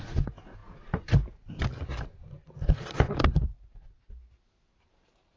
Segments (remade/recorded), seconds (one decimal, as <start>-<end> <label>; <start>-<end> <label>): 0.0-5.4 recorded